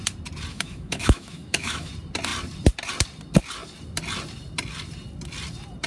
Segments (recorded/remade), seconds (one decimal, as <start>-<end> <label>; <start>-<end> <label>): 0.0-0.5 recorded; 0.5-1.9 remade; 1.9-5.9 recorded